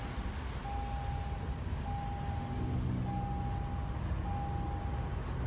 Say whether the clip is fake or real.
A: real